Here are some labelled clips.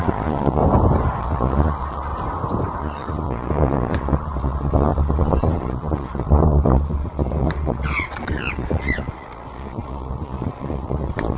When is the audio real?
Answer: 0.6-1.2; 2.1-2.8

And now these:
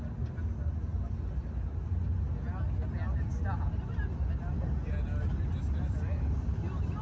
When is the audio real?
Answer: 0.0-7.0

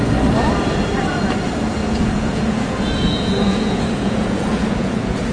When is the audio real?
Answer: 0.0-1.8

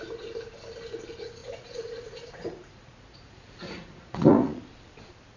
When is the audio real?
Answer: 0.0-1.4; 4.6-5.4

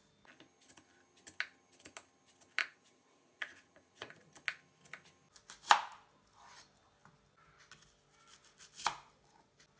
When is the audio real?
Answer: 0.0-2.6; 4.3-9.8

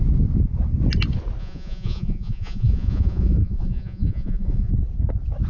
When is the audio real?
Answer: 0.0-1.4; 4.7-5.5

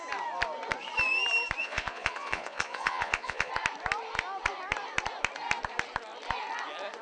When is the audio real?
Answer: 0.0-1.6; 3.5-7.0

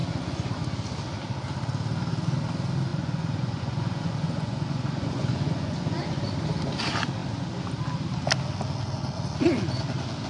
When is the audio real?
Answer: 0.6-2.9; 6.3-10.3